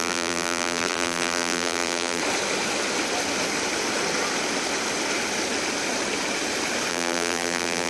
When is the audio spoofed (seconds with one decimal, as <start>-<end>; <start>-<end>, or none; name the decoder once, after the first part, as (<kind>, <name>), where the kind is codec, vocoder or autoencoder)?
0.0-2.2 (vocoder, BigVGAN v2); 6.9-7.9

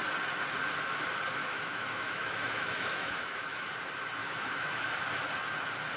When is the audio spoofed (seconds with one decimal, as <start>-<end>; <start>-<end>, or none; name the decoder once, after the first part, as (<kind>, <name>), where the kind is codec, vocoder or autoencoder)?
1.4-3.7 (autoencoder, DAC-VAE); 4.2-5.0

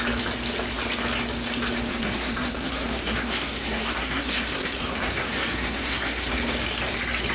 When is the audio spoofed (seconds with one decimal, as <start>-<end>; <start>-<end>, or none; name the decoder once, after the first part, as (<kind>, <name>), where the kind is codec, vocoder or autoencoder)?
1.9-6.3 (codec, SNAC)

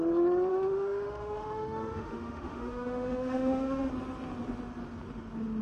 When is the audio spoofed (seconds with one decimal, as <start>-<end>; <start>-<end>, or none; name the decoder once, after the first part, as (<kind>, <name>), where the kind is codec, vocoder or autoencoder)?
0.5-3.9 (autoencoder, DAC-VAE)

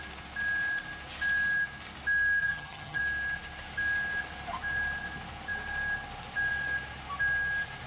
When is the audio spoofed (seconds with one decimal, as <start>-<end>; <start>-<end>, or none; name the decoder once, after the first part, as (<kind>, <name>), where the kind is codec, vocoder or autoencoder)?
2.4-3.0 (vocoder, HiFi-GAN)

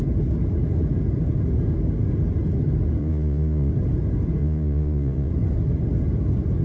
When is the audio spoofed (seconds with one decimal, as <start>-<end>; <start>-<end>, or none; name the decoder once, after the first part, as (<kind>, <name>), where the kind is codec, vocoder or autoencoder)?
3.0-3.7 (vocoder, Vocos); 4.4-5.3

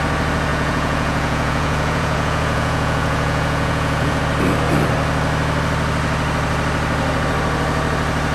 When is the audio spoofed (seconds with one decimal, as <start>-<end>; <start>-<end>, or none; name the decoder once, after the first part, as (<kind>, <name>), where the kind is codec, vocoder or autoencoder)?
0.5-4.2 (vocoder, Vocos)

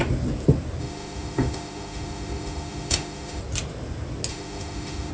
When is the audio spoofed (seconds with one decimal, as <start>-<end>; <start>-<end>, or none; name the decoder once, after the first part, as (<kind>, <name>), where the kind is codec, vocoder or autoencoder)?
0.8-3.4 (autoencoder, DAC-VAE); 4.3-5.1